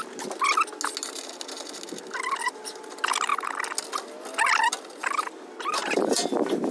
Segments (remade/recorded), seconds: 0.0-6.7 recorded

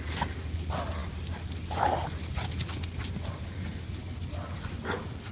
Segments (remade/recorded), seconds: 0.0-5.3 recorded

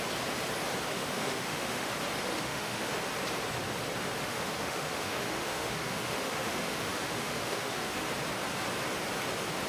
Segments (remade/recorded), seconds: 0.0-0.9 recorded; 0.9-1.9 remade; 1.9-2.3 recorded; 2.3-2.9 remade; 2.9-4.2 recorded; 4.2-8.1 remade; 8.1-9.7 recorded

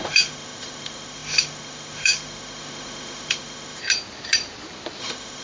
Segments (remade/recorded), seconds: 0.0-3.8 remade; 3.8-5.0 recorded; 5.0-5.4 remade

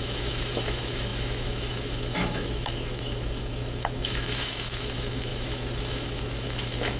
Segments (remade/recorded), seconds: 0.0-7.0 remade